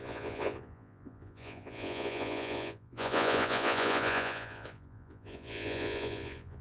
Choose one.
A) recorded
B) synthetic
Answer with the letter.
B